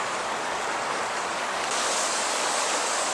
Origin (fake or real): fake